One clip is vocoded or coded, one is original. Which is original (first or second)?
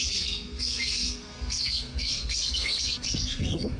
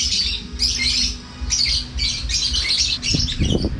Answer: second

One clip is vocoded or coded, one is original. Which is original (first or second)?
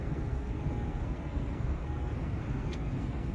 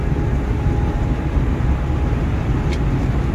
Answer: second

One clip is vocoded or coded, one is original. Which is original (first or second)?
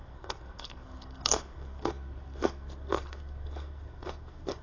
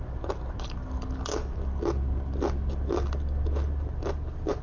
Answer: second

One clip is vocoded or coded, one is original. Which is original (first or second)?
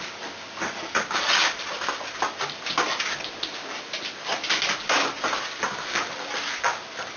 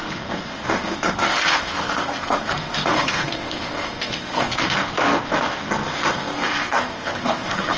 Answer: first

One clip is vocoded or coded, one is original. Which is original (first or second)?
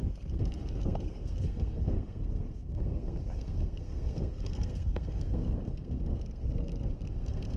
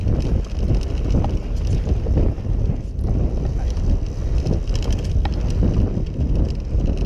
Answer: second